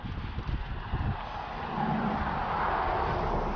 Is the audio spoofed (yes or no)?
no